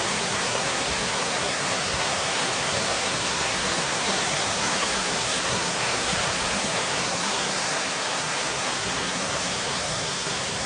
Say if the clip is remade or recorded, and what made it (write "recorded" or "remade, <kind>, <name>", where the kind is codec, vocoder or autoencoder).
remade, codec, SNAC